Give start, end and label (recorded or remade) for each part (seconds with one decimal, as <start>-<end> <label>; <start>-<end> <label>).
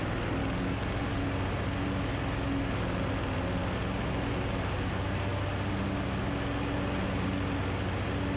0.0-0.4 recorded; 0.4-1.0 remade; 1.0-8.4 recorded